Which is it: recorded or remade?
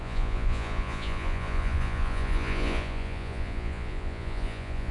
remade